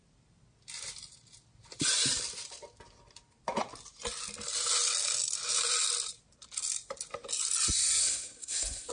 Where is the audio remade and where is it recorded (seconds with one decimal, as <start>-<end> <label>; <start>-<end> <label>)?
0.0-8.0 recorded; 8.0-8.9 remade